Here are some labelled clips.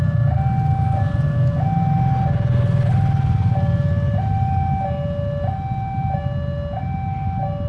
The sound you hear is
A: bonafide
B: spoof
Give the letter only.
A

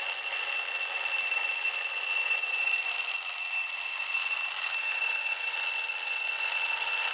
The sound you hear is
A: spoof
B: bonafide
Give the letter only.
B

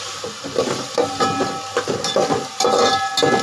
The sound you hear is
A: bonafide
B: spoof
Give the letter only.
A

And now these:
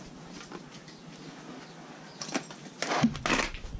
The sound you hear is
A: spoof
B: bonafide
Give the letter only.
B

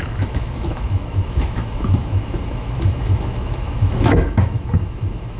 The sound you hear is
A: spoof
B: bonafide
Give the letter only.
A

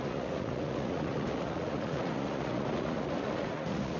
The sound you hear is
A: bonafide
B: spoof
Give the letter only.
B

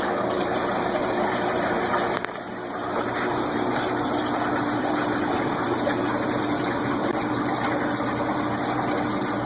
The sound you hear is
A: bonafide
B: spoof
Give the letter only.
B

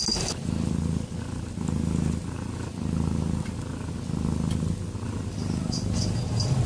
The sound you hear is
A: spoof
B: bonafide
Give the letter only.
B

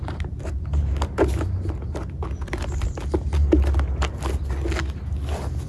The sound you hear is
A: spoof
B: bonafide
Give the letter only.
B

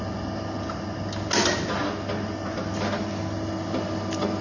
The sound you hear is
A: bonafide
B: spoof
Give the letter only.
A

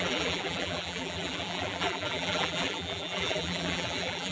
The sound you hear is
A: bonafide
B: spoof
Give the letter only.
B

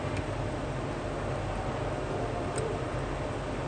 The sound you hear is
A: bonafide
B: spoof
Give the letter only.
A